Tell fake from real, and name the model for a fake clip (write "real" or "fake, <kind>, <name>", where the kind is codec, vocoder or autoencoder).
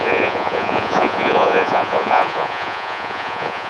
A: fake, vocoder, Vocos